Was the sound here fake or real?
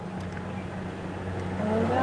real